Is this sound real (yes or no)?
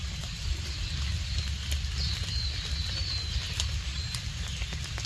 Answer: yes